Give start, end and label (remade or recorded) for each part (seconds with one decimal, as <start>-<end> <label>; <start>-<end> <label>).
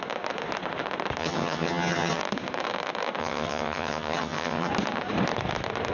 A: 0.0-1.2 recorded; 1.2-2.2 remade; 2.2-3.2 recorded; 3.2-4.7 remade; 4.7-5.9 recorded